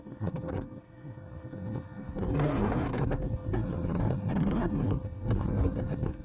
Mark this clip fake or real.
fake